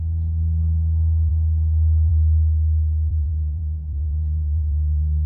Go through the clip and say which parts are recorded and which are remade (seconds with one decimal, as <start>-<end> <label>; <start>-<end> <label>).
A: 0.0-3.1 recorded; 3.1-5.3 remade